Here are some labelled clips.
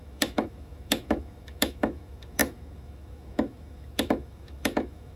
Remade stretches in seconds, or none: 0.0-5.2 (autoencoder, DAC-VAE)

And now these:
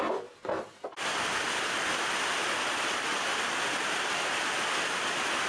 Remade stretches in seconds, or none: 2.4-5.5 (vocoder, BigVGAN v2)

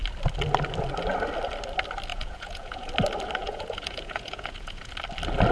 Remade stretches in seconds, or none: 2.1-2.9 (vocoder, Vocos); 3.4-4.9